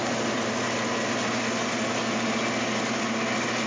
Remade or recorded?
recorded